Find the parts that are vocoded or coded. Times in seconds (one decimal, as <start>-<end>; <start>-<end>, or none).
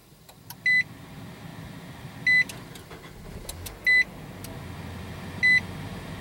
none